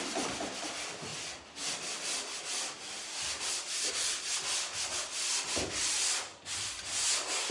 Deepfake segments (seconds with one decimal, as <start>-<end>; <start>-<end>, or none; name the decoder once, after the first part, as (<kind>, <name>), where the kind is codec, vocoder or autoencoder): none